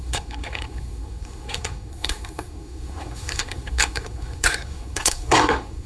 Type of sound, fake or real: fake